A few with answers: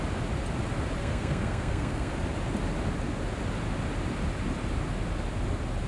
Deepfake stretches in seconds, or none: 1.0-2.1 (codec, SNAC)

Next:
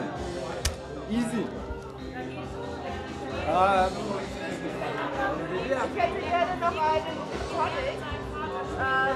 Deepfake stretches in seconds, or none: 4.2-5.4 (codec, SNAC); 6.9-7.5

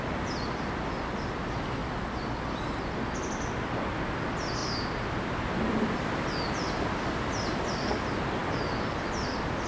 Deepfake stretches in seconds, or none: none

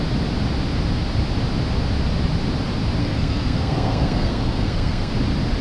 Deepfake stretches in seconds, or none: 3.0-5.1 (codec, SNAC)